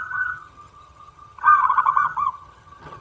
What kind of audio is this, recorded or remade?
remade